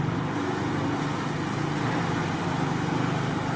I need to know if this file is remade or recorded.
recorded